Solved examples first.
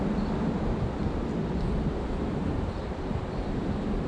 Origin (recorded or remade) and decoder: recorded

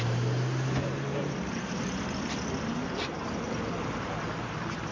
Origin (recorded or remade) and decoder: recorded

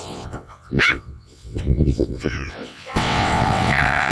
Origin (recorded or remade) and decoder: remade, vocoder, WaveNeXt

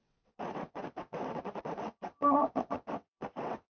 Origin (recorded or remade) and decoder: remade, vocoder, WaveNeXt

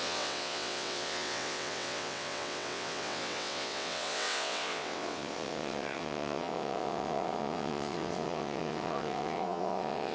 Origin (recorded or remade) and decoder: remade, vocoder, WaveNeXt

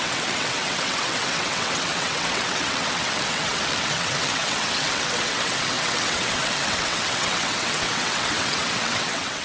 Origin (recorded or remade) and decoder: remade, vocoder, WaveNeXt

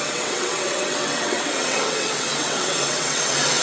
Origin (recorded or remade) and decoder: remade, vocoder, WaveNeXt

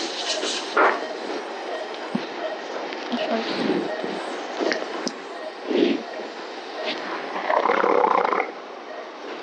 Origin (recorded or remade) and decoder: recorded